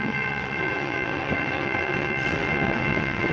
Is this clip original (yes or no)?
no